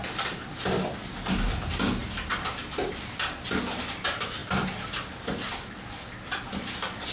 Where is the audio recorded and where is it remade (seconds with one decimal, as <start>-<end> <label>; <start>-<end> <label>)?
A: 0.0-4.4 recorded; 4.4-5.5 remade; 5.5-7.1 recorded